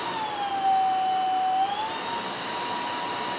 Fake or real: real